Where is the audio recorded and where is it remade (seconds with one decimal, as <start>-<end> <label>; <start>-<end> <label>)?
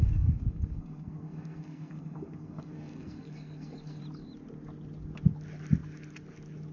0.0-4.0 remade; 4.0-6.7 recorded